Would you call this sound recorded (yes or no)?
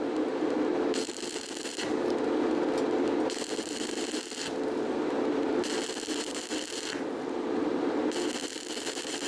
yes